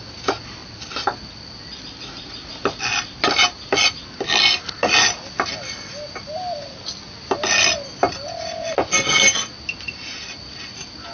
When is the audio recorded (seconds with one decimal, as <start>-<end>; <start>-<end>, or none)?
0.0-11.1

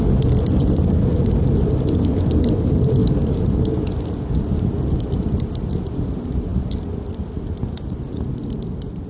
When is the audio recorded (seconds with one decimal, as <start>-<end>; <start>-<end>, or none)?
0.0-9.1

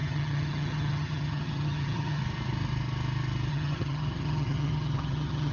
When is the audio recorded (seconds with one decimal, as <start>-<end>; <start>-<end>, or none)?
2.2-3.5

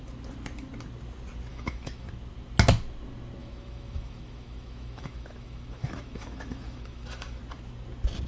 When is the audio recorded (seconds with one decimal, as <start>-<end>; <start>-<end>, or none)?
0.0-1.5; 2.1-3.4; 7.4-8.3

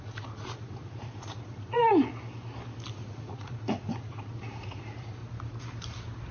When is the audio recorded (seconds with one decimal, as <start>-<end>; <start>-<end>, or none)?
1.9-2.9; 5.2-6.3